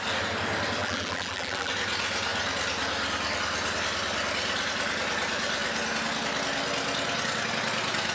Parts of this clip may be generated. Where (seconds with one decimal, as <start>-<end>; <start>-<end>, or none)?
0.8-1.7